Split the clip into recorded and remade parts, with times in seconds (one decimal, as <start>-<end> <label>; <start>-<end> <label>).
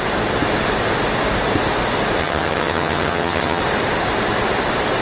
0.0-2.2 recorded; 2.2-3.6 remade; 3.6-5.0 recorded